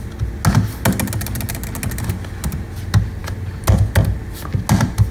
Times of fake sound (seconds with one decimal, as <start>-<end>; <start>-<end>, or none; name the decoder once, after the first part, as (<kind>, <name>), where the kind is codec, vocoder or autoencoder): none